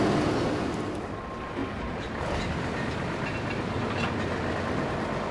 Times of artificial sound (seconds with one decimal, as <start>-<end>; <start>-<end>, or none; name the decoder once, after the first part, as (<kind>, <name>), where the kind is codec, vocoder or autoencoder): 1.6-2.4 (vocoder, BigVGAN v2)